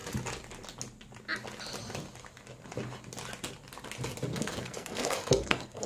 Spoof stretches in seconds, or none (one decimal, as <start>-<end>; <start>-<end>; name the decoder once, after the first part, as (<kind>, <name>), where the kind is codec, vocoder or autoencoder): 4.3-5.9 (codec, SNAC)